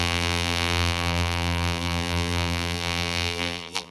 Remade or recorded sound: remade